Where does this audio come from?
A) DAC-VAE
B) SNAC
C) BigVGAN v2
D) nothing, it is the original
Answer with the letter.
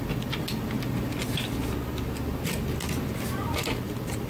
D